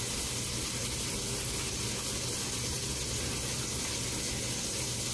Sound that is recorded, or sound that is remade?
recorded